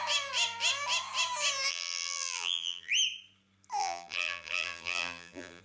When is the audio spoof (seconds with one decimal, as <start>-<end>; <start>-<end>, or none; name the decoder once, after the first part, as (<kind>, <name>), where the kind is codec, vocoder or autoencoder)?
1.7-2.9 (vocoder, BigVGAN v2); 3.8-5.6